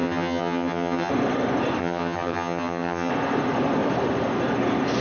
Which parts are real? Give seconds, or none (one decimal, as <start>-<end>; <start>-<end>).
1.1-1.8; 3.1-5.0